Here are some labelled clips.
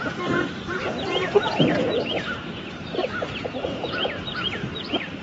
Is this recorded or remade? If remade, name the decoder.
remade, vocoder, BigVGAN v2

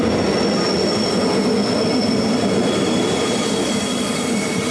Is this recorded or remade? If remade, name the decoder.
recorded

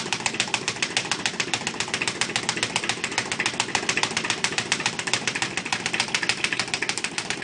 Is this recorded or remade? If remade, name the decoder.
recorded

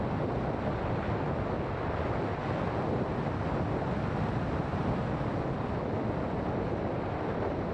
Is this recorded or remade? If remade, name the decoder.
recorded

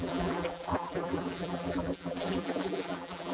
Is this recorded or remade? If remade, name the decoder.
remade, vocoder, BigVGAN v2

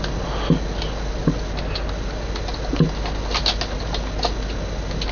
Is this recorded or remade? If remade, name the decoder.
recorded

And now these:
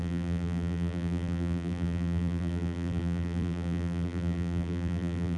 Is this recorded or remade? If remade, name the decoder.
remade, vocoder, BigVGAN v2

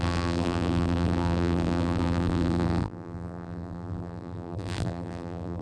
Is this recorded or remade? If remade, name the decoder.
remade, vocoder, BigVGAN v2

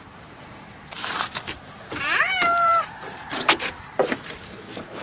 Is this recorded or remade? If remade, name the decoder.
remade, vocoder, BigVGAN v2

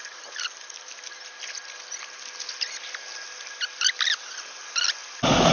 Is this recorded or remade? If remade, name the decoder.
recorded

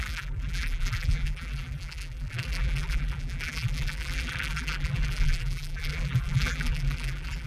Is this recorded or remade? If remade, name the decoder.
remade, vocoder, BigVGAN v2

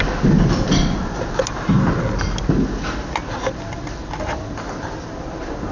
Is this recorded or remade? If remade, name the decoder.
recorded